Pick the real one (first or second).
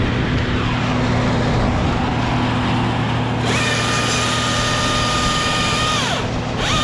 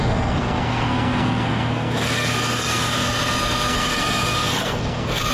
first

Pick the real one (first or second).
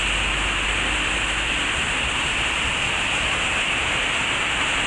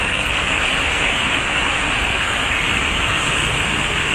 first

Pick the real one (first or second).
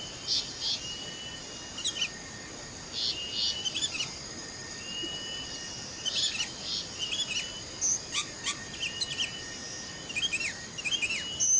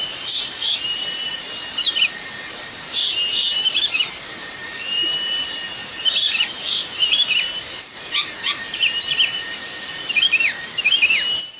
first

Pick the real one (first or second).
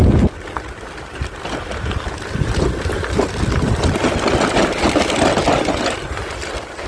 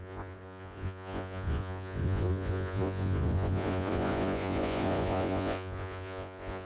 first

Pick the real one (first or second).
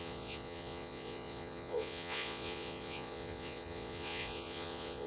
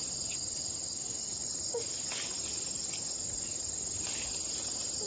second